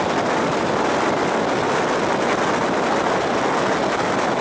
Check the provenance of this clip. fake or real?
real